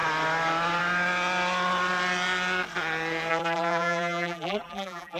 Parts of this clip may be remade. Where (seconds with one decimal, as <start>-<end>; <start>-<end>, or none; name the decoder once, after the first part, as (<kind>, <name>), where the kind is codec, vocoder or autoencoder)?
3.3-5.2 (vocoder, BigVGAN v2)